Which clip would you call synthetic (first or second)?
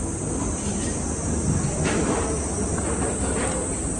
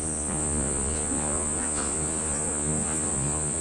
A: second